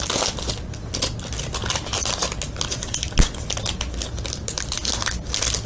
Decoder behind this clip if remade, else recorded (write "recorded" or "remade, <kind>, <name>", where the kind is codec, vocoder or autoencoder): recorded